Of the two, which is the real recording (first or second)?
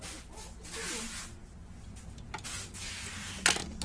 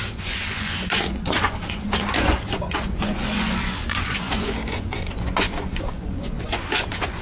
first